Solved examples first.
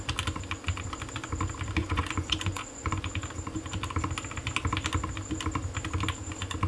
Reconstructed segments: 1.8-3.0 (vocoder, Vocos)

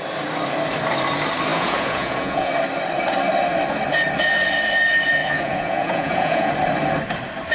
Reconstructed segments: 1.5-2.5 (vocoder, Vocos); 5.2-6.5

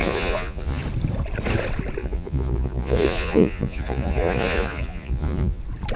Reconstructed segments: 0.0-0.8 (vocoder, Vocos); 2.0-5.6

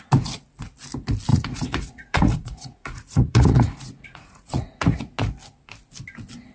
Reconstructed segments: 1.3-5.0 (vocoder, Vocos)

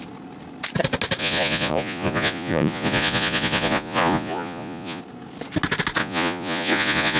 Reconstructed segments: 1.2-5.0 (vocoder, Vocos); 6.0-7.2

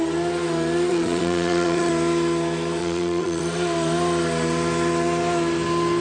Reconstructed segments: 0.9-1.9 (vocoder, Vocos); 2.8-3.4

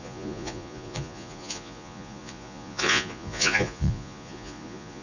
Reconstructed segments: 0.0-5.0 (vocoder, Vocos)